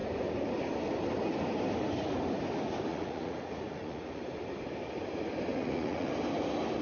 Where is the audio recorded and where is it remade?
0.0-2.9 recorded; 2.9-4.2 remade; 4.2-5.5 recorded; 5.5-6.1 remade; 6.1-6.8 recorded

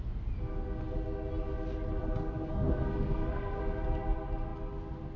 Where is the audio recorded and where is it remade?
0.0-2.2 recorded; 2.2-3.6 remade; 3.6-5.2 recorded

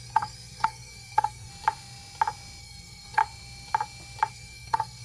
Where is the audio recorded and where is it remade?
0.0-1.5 remade; 1.5-2.6 recorded; 2.6-3.2 remade; 3.2-4.3 recorded; 4.3-5.0 remade

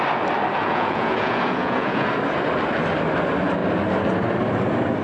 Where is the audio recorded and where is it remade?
0.0-0.6 recorded; 0.6-2.1 remade; 2.1-5.0 recorded

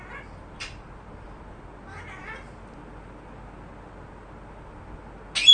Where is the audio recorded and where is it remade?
0.0-5.5 recorded

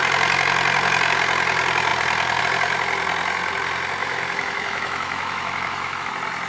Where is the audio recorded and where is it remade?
0.0-4.0 recorded; 4.0-6.1 remade; 6.1-6.5 recorded

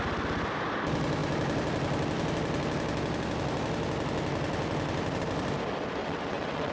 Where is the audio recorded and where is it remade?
0.0-6.0 recorded; 6.0-6.7 remade

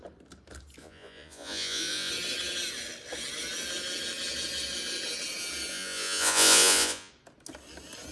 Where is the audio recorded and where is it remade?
0.0-0.8 recorded; 0.8-2.1 remade; 2.1-5.7 recorded; 5.7-7.1 remade; 7.1-8.1 recorded